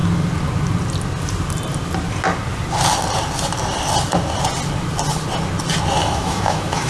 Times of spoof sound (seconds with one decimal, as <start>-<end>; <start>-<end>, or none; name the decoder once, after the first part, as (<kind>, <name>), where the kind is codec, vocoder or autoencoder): 6.0-6.9 (autoencoder, DAC-VAE)